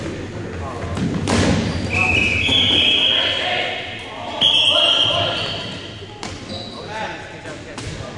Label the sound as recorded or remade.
recorded